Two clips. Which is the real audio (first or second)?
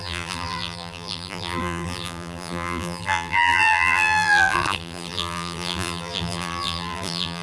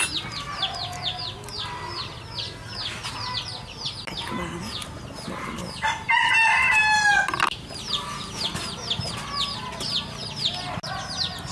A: second